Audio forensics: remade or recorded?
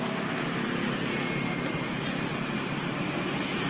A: recorded